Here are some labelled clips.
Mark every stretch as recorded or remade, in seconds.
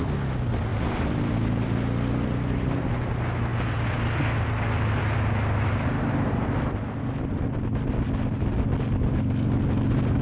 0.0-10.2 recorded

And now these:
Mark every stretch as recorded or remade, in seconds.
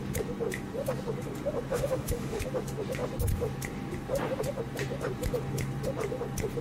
0.0-1.7 recorded; 1.7-2.4 remade; 2.4-6.6 recorded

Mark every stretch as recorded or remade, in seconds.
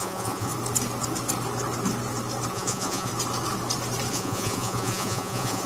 0.0-0.5 remade; 0.5-2.5 recorded; 2.5-3.1 remade; 3.1-4.1 recorded; 4.1-5.7 remade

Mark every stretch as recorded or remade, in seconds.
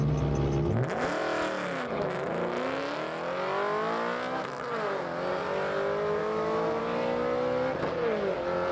0.0-6.2 recorded; 6.2-6.8 remade; 6.8-8.7 recorded